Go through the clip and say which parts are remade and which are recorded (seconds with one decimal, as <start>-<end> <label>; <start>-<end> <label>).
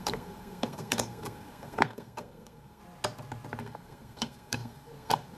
0.0-2.8 remade; 2.8-3.6 recorded; 3.6-5.4 remade